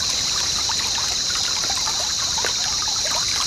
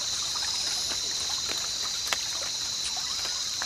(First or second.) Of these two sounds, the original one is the second